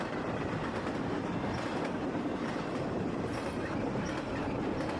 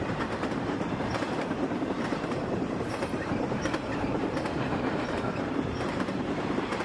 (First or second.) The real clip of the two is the first